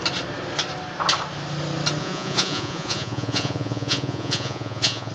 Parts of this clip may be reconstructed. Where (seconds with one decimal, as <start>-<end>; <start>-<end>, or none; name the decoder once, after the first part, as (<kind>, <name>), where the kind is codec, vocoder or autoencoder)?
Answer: 2.0-5.1 (vocoder, Vocos)